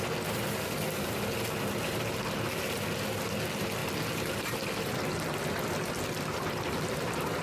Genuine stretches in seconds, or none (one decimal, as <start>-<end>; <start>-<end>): 0.0-7.4